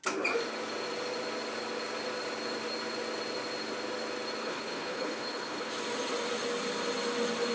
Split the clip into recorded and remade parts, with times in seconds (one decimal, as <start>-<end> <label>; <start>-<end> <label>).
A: 0.0-4.4 recorded; 4.4-5.7 remade; 5.7-7.5 recorded